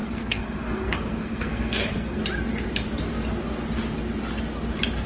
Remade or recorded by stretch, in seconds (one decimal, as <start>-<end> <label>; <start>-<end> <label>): 0.0-2.2 remade; 2.2-5.1 recorded